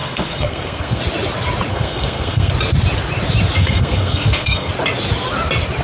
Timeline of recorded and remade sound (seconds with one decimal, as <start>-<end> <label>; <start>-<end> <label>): 0.0-1.0 remade; 1.0-1.7 recorded; 1.7-2.5 remade; 2.5-3.6 recorded; 3.6-4.7 remade; 4.7-5.8 recorded